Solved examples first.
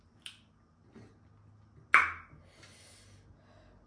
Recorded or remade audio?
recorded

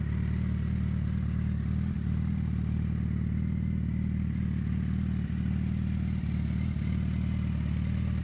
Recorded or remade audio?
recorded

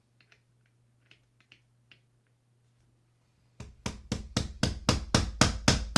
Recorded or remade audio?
recorded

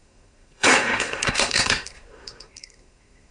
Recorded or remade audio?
remade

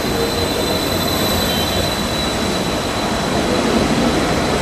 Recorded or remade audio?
recorded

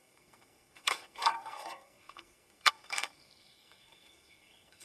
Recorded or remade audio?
remade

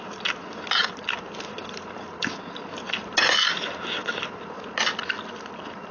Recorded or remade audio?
recorded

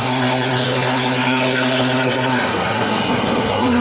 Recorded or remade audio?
remade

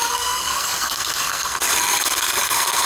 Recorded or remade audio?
remade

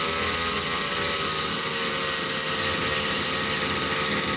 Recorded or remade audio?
recorded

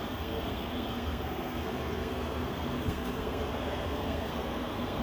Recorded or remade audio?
remade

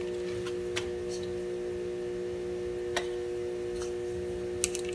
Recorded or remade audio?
recorded